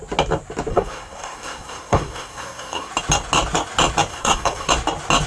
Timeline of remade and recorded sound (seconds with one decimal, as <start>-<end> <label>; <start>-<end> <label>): 0.0-0.7 recorded; 0.7-2.9 remade; 2.9-4.1 recorded; 4.1-4.7 remade; 4.7-5.3 recorded